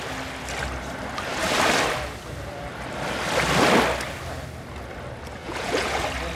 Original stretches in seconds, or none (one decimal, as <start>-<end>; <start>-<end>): 0.0-5.4; 6.0-6.4